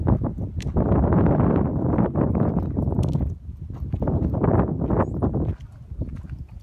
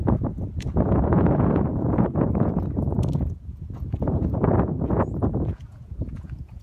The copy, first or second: second